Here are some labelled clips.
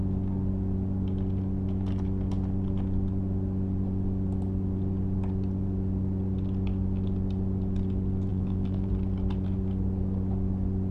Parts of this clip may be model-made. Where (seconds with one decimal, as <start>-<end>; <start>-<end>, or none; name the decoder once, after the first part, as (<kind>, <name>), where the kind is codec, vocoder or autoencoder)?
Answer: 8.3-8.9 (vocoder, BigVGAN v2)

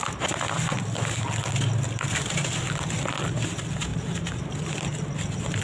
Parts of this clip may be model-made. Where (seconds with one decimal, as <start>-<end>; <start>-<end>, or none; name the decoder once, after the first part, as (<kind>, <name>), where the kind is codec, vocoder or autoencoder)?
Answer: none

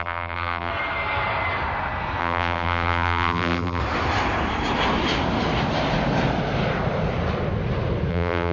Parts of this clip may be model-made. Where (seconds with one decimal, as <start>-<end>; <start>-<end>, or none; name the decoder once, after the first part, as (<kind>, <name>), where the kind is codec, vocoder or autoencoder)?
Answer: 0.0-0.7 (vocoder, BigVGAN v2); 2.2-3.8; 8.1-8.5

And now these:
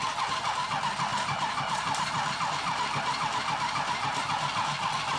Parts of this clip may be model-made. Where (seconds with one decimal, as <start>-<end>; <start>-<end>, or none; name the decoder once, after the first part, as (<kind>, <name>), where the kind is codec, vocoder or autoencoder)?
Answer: 1.1-4.2 (vocoder, BigVGAN v2)